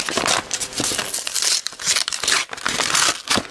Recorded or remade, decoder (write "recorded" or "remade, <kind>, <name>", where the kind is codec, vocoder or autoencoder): recorded